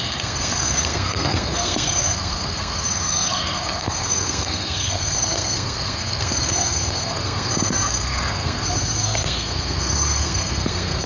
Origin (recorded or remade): remade